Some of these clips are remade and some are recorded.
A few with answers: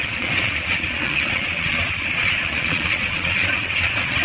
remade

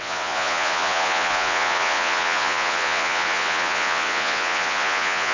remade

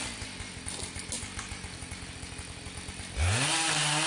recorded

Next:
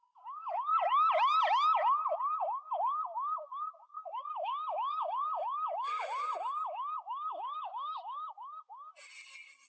recorded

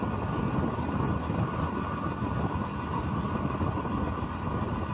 recorded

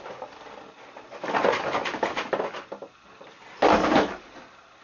recorded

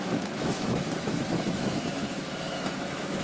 remade